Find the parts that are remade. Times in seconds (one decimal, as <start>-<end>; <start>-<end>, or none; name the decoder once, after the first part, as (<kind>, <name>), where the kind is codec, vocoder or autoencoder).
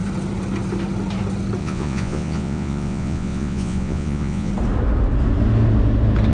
1.6-4.5 (vocoder, Vocos)